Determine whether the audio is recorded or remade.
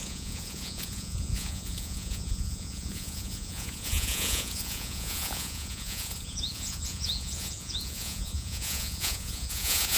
remade